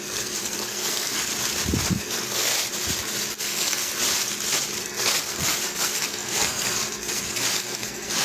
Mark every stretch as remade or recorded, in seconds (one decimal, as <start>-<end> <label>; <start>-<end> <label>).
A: 0.0-1.3 remade; 1.3-1.9 recorded; 1.9-2.5 remade; 2.5-3.4 recorded; 3.4-3.9 remade; 3.9-4.8 recorded; 4.8-8.2 remade